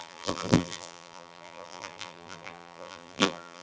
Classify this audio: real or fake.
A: fake